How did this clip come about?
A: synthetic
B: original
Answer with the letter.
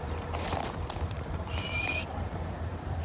A